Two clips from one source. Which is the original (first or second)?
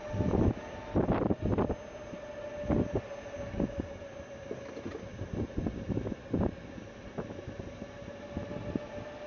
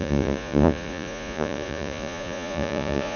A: first